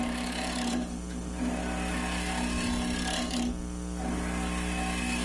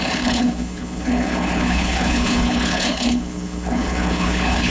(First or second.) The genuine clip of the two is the first